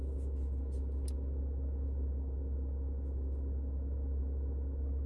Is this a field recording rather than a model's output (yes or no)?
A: yes